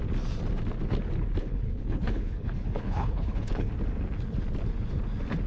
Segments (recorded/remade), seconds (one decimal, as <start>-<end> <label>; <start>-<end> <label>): 0.0-1.4 recorded; 1.4-3.7 remade; 3.7-5.5 recorded